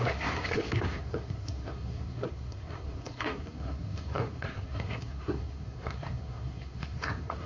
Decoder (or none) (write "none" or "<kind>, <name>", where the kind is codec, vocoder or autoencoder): codec, SNAC